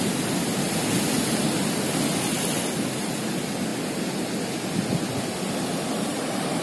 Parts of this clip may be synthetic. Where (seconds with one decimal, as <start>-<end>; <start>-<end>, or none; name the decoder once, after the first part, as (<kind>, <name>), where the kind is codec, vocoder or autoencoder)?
none